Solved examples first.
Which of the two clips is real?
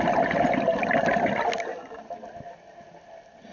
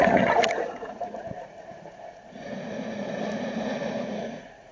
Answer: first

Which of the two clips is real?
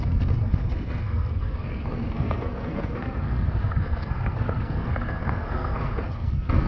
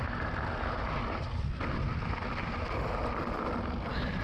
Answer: second